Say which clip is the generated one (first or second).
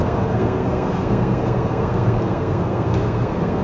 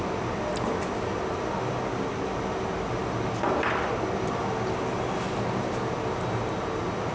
first